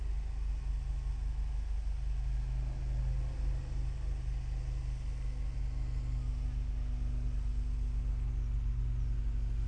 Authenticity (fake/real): real